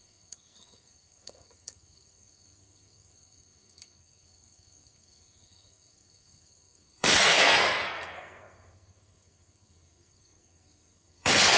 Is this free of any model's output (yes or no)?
no